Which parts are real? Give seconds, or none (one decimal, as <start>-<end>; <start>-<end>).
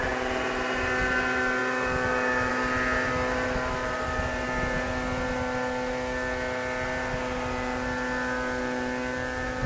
0.0-9.7